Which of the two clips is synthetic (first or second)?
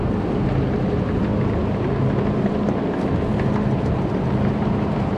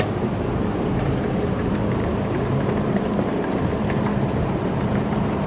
second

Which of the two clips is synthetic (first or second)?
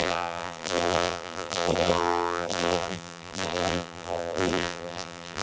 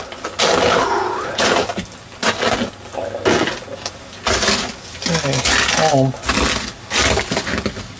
first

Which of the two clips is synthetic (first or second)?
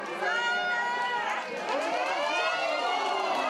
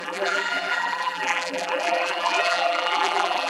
second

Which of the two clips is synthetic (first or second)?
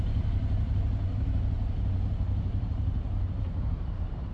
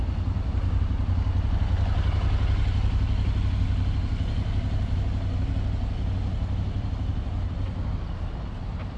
first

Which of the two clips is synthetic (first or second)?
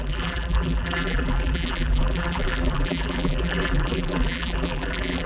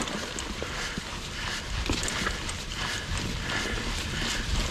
first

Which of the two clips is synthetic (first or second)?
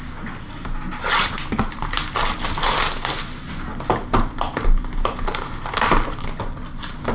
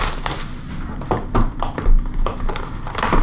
second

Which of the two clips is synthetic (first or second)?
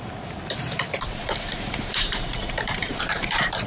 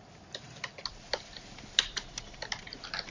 first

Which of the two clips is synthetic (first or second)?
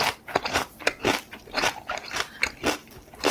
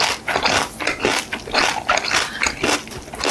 first